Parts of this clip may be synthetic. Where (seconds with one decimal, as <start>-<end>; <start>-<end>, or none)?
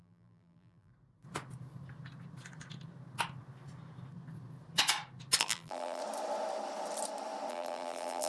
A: 0.0-0.9; 5.4-6.0; 7.5-8.3